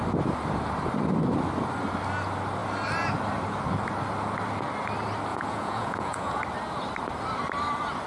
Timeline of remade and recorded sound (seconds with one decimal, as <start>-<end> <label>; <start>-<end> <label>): 0.0-5.3 recorded; 5.3-6.4 remade; 6.4-8.1 recorded